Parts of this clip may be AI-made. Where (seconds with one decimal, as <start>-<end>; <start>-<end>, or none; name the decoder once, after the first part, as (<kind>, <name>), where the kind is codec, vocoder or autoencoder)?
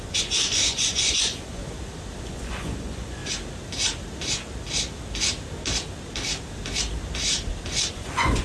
0.0-1.6 (vocoder, Vocos); 2.2-3.2; 7.9-8.4